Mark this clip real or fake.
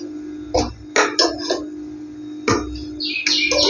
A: real